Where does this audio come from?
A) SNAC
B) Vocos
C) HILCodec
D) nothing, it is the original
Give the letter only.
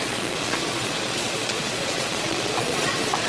B